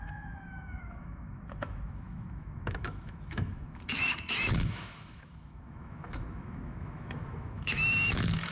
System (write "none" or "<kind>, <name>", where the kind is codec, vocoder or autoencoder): autoencoder, DAC-VAE